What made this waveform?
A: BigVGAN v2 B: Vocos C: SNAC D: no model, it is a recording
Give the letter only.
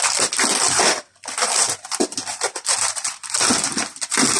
D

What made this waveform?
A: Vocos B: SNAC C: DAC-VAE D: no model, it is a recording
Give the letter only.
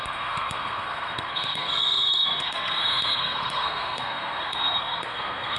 B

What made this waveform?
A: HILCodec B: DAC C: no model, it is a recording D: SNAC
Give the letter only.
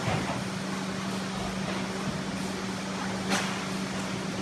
C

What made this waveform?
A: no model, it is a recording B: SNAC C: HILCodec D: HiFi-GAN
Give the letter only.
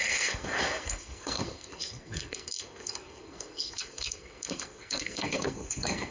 B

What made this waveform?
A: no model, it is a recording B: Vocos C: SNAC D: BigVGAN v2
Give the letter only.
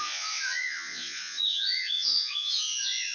B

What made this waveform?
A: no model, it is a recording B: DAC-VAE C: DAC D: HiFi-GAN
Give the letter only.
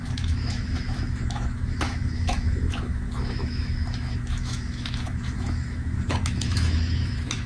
B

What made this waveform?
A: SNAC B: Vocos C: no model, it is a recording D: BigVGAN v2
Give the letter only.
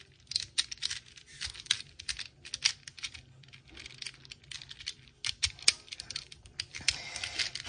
C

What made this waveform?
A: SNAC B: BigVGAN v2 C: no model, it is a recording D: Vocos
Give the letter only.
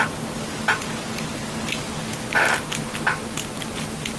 C